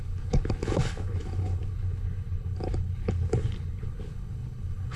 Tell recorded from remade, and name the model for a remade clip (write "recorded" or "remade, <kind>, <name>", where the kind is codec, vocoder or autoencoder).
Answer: remade, codec, HILCodec